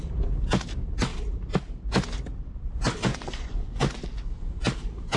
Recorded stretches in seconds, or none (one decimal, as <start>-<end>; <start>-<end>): 0.0-3.1; 4.0-5.2